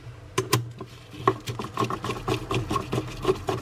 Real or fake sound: real